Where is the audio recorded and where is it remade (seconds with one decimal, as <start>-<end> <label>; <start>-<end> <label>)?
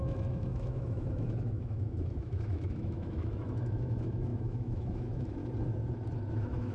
0.0-5.4 remade; 5.4-6.3 recorded; 6.3-6.7 remade